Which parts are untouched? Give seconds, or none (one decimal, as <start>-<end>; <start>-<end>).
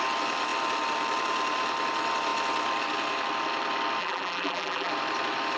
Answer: 0.0-4.0; 4.9-5.6